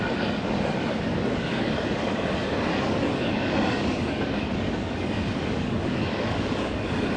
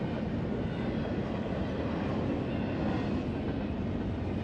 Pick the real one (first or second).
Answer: second